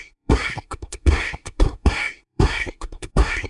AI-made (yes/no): yes